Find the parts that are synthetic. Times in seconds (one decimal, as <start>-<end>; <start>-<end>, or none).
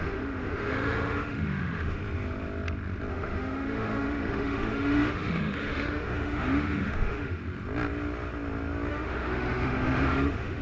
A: 0.0-2.0; 3.1-7.4; 8.9-10.6